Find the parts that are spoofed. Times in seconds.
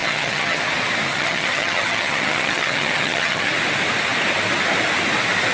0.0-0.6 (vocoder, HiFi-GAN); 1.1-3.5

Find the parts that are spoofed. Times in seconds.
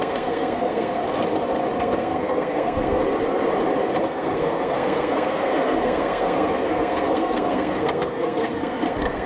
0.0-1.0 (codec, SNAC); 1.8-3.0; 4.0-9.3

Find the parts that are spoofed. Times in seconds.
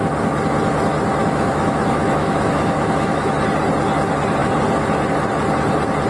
1.2-3.3 (autoencoder, DAC-VAE)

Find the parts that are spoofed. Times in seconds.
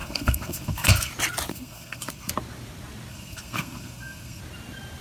0.0-1.1 (codec, SNAC); 1.5-2.3; 3.1-4.4